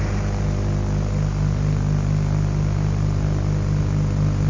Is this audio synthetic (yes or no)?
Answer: no